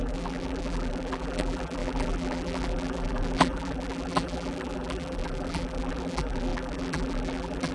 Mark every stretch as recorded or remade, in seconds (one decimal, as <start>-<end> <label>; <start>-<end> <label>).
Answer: 0.0-7.7 remade